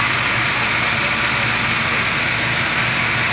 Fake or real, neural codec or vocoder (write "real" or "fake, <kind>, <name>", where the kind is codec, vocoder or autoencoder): real